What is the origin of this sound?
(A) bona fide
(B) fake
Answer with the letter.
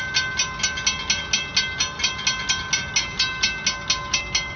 A